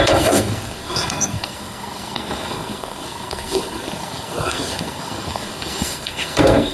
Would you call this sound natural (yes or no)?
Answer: no